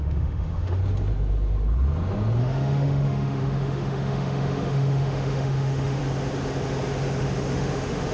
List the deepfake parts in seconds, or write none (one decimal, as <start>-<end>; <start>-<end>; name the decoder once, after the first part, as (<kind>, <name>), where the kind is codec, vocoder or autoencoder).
0.0-0.8 (autoencoder, DAC-VAE); 2.4-6.0; 7.2-8.1